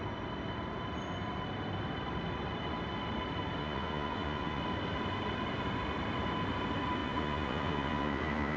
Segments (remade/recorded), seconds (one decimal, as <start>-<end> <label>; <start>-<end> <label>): 0.0-3.6 recorded; 3.6-4.6 remade; 4.6-7.0 recorded; 7.0-8.6 remade